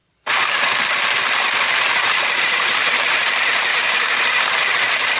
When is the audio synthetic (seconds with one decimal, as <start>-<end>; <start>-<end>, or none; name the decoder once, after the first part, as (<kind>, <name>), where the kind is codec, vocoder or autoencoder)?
3.7-4.2 (codec, DAC)